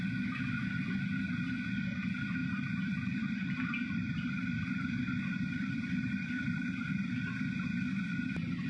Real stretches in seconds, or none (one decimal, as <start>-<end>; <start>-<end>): 0.0-2.4; 7.2-8.7